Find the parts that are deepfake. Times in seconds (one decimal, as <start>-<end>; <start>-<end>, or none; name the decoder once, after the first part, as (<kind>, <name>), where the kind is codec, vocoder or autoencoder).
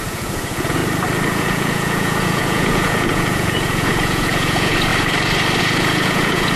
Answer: 0.0-0.8 (vocoder, Vocos); 1.3-4.9; 5.6-6.6